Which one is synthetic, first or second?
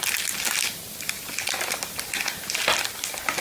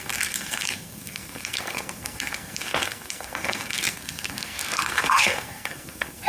second